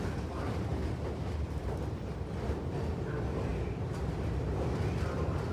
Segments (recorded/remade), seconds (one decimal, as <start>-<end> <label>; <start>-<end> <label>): 0.0-5.5 recorded